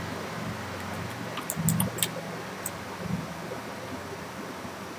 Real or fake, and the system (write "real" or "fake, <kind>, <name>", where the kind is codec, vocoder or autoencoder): real